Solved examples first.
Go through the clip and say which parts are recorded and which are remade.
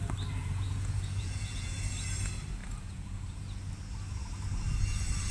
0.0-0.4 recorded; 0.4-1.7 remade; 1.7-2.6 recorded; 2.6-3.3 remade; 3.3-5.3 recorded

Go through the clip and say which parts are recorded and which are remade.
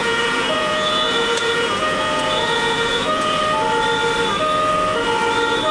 0.0-3.4 remade; 3.4-5.7 recorded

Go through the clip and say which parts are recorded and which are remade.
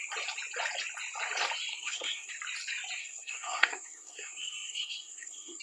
0.0-1.7 recorded; 1.7-2.3 remade; 2.3-3.0 recorded; 3.0-5.6 remade